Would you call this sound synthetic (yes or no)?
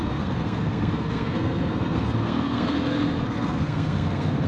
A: yes